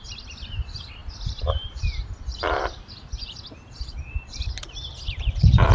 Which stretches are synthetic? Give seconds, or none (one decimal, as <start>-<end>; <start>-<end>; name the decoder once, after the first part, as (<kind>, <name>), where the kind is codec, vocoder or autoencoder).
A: none